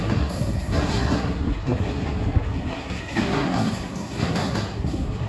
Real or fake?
fake